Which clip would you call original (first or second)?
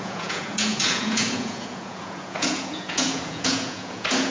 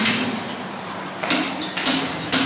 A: second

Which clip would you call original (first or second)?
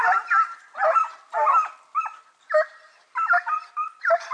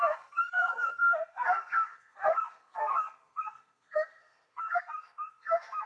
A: first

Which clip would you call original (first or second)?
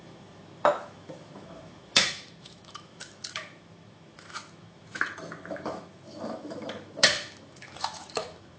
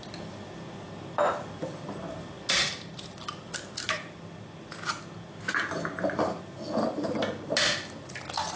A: second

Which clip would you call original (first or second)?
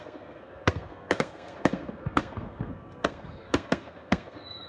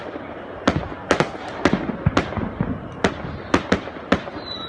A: second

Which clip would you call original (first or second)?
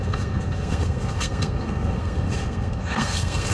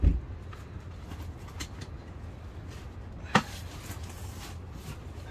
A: second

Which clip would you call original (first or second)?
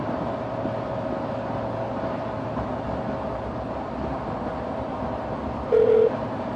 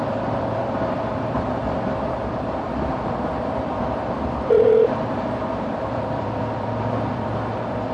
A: first